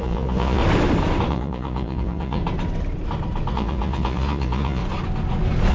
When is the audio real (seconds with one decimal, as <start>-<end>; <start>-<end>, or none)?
0.6-1.3; 2.4-3.5; 4.8-5.7